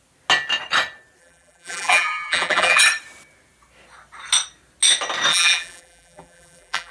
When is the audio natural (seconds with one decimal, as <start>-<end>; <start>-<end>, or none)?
0.0-1.2; 2.8-5.3